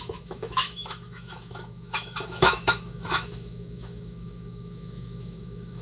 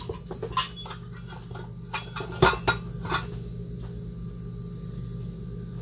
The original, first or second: second